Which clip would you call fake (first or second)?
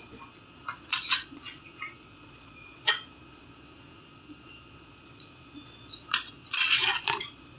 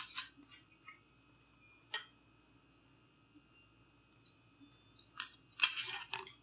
first